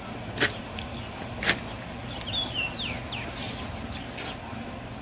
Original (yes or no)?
yes